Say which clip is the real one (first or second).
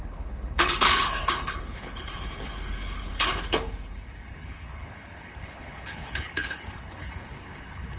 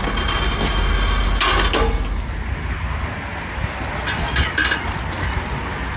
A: second